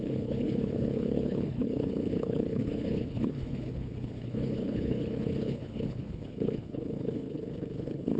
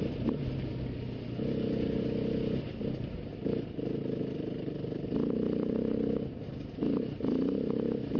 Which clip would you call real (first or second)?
second